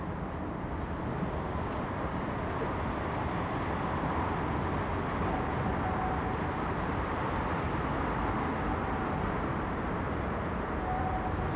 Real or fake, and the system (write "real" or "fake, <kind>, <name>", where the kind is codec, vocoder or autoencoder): real